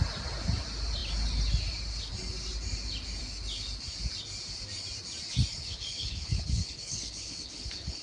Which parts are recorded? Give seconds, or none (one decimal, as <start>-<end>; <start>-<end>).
0.0-5.5